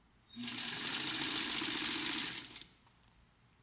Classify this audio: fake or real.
real